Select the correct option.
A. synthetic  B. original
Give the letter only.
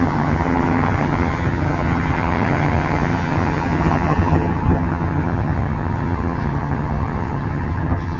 A